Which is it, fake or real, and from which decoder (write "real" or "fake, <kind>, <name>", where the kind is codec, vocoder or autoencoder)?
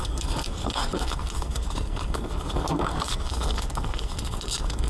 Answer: fake, codec, SNAC